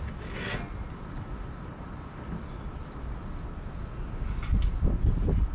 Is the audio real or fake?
real